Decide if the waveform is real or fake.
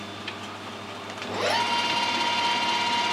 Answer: real